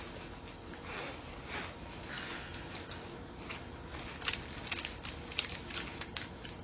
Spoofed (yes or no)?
no